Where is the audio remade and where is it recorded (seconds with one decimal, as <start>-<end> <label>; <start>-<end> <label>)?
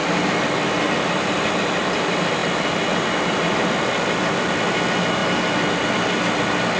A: 0.0-6.8 recorded